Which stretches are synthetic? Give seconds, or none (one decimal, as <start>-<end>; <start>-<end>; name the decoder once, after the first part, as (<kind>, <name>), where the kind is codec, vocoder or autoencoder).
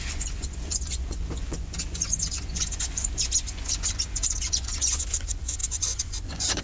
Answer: 0.0-6.6 (vocoder, Vocos)